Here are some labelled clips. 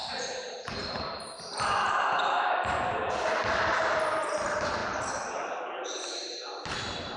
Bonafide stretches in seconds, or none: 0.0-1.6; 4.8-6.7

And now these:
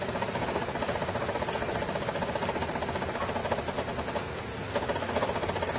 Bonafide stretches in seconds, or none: 0.0-3.4; 4.1-5.8

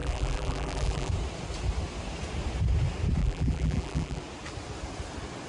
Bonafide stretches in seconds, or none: 1.1-3.2; 4.2-5.5

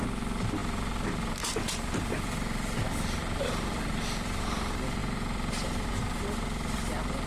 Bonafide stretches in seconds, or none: none

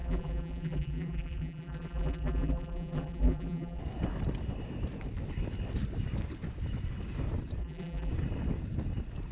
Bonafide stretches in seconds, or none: 3.8-7.6; 8.1-9.3